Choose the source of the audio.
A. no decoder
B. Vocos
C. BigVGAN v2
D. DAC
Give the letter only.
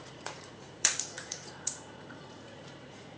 B